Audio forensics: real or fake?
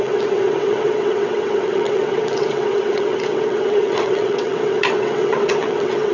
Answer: fake